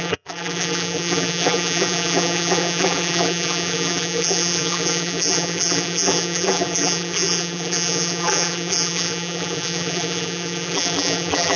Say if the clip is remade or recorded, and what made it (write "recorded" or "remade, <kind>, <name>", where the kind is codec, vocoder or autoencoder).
remade, vocoder, BigVGAN v2